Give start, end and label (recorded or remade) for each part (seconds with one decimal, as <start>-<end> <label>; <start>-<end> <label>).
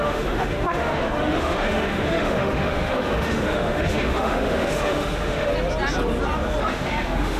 0.0-5.5 remade; 5.5-6.6 recorded; 6.6-7.4 remade